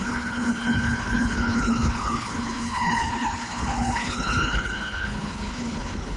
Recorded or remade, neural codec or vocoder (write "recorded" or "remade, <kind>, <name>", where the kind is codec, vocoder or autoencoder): remade, codec, HILCodec